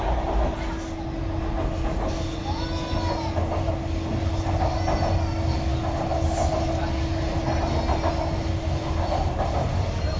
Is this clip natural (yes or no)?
yes